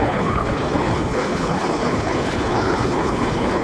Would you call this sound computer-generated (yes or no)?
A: yes